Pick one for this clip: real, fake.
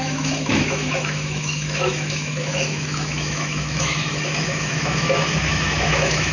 fake